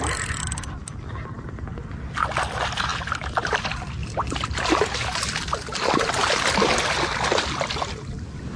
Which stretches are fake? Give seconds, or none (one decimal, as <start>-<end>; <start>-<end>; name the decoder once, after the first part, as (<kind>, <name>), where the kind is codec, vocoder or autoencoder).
none